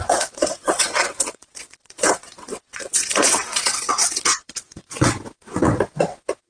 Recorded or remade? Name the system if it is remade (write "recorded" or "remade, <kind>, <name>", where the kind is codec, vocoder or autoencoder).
remade, vocoder, WaveNeXt